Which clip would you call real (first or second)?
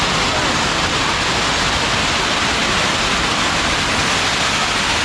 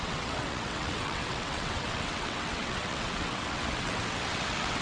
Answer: first